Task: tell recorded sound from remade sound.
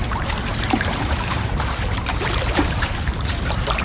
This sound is remade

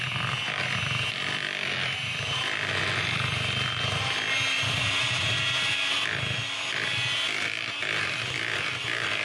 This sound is recorded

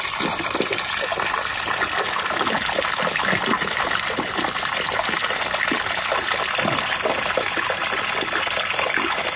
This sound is recorded